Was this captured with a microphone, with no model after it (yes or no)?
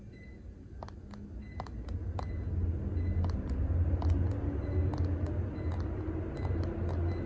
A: yes